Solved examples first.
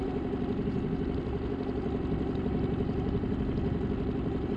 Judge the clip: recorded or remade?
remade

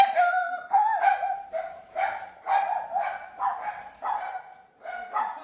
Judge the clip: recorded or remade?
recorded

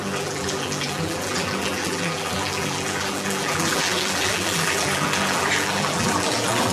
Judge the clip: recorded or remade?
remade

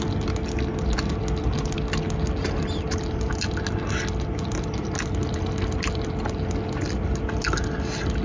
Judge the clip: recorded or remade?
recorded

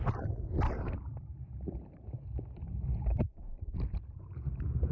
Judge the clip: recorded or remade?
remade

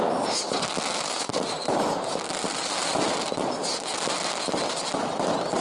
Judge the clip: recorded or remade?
recorded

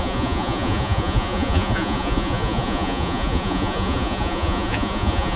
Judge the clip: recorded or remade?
remade